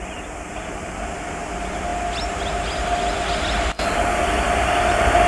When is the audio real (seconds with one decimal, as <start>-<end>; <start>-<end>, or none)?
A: 0.0-5.3